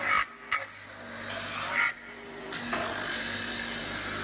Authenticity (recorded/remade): recorded